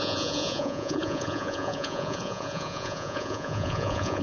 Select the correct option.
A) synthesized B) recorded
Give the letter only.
A